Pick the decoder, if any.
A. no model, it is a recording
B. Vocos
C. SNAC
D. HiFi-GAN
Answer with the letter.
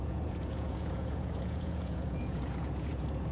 B